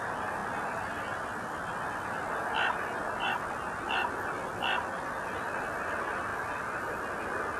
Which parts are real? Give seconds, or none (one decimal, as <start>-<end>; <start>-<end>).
0.0-7.6